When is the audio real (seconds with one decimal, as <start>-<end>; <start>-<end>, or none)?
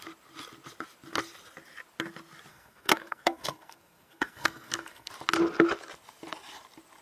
0.0-2.5; 5.1-7.0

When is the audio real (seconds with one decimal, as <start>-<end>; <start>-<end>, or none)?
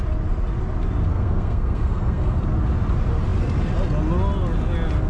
0.0-1.1; 2.4-5.1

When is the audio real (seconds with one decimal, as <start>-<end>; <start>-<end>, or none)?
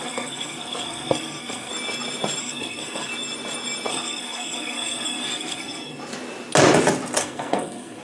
1.7-2.4; 3.1-3.9; 6.0-7.2